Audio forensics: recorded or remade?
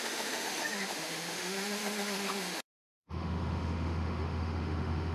remade